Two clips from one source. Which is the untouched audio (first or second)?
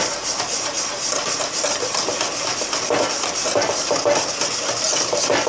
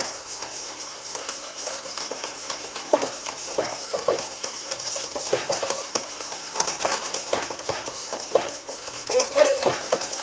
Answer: first